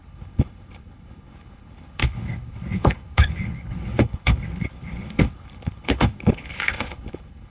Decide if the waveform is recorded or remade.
remade